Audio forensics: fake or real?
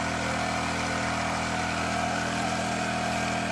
real